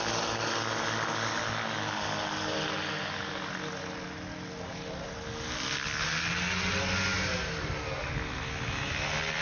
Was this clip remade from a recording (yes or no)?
no